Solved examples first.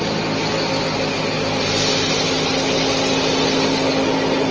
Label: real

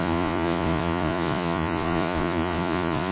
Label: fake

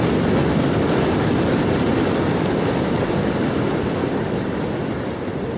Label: real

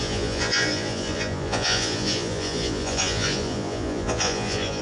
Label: fake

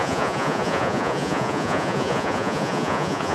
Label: fake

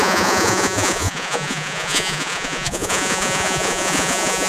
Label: fake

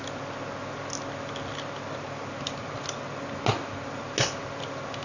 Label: real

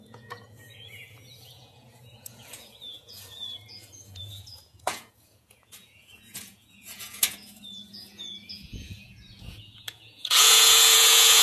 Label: fake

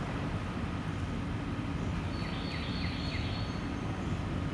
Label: real